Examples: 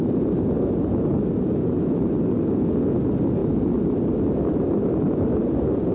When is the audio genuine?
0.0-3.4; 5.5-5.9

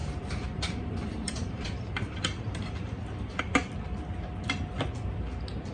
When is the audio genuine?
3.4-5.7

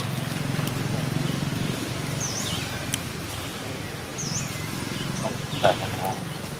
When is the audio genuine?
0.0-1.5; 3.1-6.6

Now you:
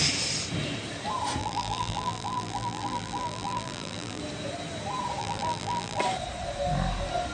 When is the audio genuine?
0.0-1.4; 4.2-5.2; 6.0-7.3

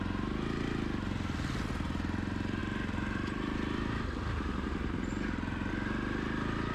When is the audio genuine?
0.0-6.7